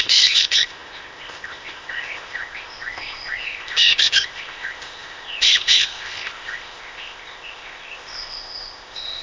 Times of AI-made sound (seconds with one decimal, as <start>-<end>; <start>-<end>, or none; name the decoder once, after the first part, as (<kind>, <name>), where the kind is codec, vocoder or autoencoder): 0.0-9.2 (codec, ZipCodec)